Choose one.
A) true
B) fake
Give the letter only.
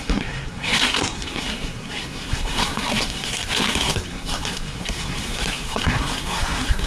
B